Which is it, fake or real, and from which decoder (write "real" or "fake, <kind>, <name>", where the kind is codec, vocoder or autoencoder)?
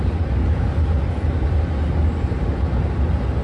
real